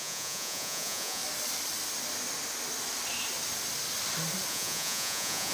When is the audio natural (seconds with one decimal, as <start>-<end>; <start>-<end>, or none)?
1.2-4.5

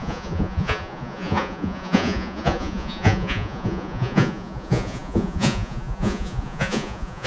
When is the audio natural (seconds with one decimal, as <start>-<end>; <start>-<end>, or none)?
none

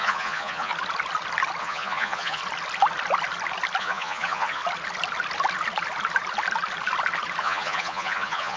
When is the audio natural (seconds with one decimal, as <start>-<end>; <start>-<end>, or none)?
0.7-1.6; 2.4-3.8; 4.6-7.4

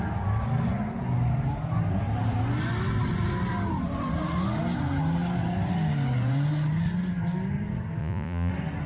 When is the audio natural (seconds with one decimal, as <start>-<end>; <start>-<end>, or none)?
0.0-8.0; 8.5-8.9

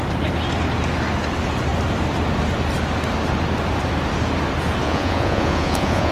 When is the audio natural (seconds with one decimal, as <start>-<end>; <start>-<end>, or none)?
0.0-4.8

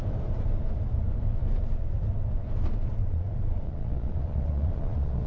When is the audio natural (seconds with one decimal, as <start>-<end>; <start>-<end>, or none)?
0.0-3.0

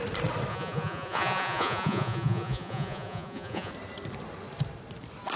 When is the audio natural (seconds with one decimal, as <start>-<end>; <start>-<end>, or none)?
0.0-0.5; 3.7-5.4

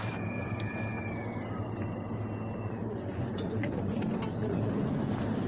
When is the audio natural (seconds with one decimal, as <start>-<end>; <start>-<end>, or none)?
0.0-2.6; 4.0-4.4; 5.0-5.5